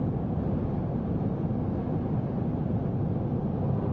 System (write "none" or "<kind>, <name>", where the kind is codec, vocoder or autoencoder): none